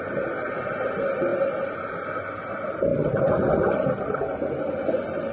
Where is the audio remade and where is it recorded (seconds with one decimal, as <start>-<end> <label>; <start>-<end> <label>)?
0.0-5.3 recorded